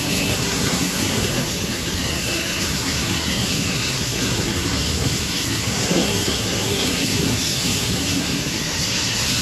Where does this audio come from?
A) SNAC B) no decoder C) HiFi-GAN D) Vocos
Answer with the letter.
A